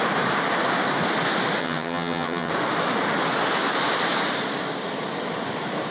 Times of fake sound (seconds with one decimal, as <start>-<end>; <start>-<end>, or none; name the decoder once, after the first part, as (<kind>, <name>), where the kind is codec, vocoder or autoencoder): 1.6-2.5 (vocoder, HiFi-GAN)